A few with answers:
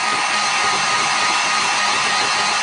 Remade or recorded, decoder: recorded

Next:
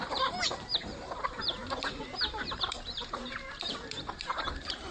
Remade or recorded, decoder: remade, vocoder, BigVGAN v2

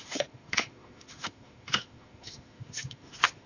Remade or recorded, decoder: remade, autoencoder, DAC-VAE